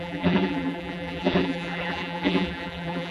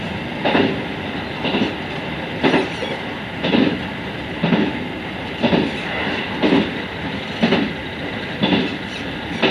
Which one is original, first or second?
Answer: second